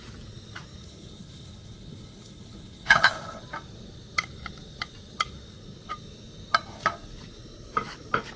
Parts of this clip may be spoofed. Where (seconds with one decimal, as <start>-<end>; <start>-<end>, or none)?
0.8-3.4